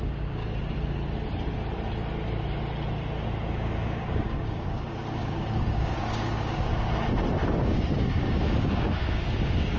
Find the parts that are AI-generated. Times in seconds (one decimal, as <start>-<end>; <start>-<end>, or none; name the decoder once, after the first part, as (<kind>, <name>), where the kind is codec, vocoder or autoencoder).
0.0-0.4 (codec, DAC); 3.5-6.7; 7.6-9.8